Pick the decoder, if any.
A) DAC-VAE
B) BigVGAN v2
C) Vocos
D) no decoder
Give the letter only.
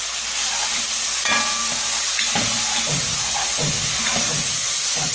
D